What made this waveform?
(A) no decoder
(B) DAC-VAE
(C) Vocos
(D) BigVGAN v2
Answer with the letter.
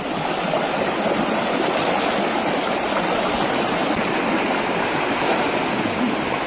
A